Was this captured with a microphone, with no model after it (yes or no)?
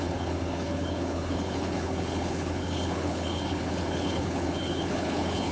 no